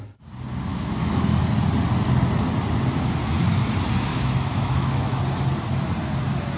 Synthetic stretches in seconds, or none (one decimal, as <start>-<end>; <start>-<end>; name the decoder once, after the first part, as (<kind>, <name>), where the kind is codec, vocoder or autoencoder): 0.7-1.4 (autoencoder, DAC-VAE); 4.1-5.2